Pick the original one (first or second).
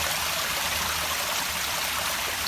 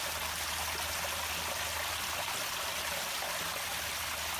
second